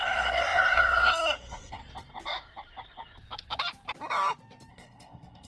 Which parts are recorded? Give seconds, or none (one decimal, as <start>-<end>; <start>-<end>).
1.8-4.7